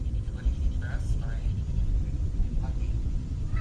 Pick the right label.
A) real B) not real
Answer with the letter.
A